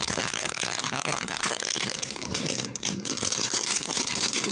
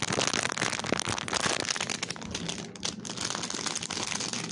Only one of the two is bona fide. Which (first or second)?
second